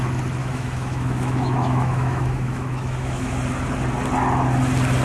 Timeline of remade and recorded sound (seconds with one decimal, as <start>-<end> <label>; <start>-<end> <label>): 0.0-0.4 recorded; 0.4-3.4 remade; 3.4-5.0 recorded